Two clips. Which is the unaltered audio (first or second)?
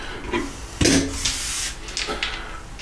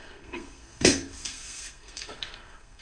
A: first